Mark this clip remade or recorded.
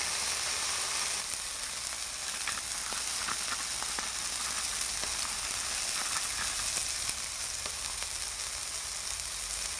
recorded